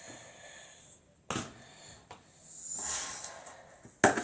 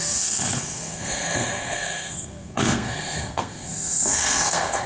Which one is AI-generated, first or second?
second